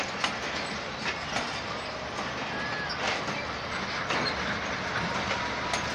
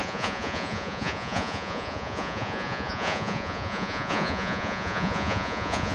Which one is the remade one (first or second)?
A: second